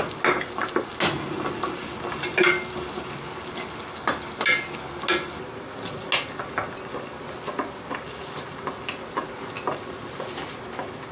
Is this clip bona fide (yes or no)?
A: yes